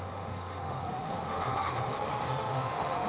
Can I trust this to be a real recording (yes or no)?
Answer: no